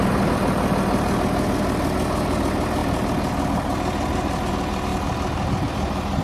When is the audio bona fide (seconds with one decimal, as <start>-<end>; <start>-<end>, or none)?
0.0-6.2